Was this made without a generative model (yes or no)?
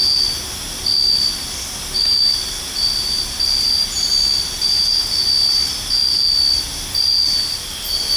yes